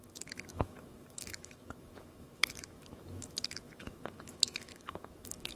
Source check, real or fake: fake